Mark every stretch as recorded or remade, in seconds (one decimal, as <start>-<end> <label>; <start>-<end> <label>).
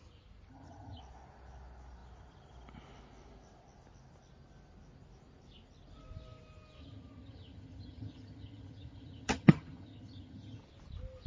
0.0-0.5 recorded; 0.5-1.0 remade; 1.0-6.8 recorded; 6.8-10.6 remade; 10.6-11.3 recorded